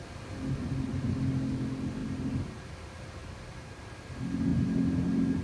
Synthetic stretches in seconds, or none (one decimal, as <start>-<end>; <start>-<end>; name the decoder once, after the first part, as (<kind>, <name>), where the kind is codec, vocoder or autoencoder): 3.2-3.9 (vocoder, BigVGAN v2)